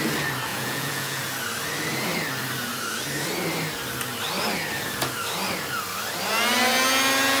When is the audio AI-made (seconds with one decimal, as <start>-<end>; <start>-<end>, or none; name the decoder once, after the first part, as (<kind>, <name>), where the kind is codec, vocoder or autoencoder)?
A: 0.5-1.2 (vocoder, Vocos)

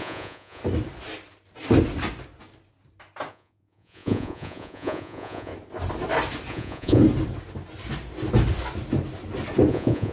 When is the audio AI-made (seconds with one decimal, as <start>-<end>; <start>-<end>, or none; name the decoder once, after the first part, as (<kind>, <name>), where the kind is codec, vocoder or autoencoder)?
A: 0.0-0.6 (vocoder, Vocos); 3.3-5.5; 6.5-7.0; 9.7-10.1

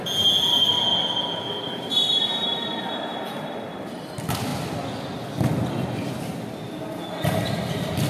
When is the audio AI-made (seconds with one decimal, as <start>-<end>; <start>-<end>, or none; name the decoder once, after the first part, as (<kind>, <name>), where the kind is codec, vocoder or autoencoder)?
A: none

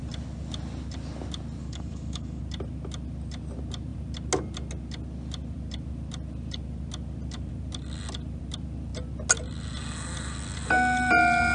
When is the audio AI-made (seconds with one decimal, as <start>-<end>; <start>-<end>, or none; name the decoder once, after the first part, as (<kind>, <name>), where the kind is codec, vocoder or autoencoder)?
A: 1.6-2.4 (codec, DAC)

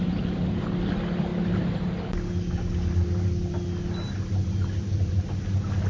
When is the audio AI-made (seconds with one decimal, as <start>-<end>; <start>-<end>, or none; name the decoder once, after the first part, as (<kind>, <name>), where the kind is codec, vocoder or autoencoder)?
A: none

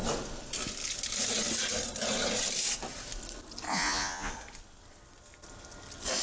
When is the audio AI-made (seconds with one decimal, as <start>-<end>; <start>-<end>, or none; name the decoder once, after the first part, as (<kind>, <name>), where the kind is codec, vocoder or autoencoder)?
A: 3.7-4.3 (vocoder, Vocos)